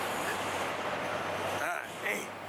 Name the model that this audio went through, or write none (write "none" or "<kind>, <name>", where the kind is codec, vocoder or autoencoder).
none